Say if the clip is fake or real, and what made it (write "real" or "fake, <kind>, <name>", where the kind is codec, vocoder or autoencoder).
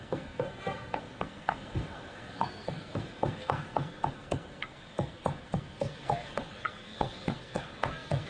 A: fake, codec, SNAC